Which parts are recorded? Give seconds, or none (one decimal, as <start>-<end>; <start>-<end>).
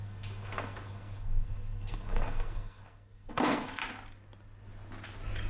3.8-5.5